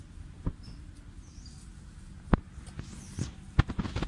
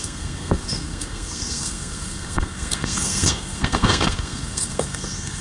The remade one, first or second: second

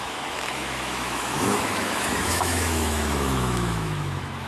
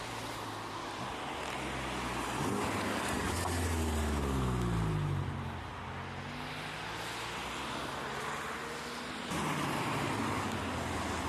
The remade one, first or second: first